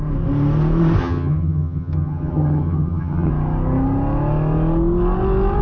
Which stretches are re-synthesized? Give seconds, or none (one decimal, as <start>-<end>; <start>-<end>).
1.0-3.3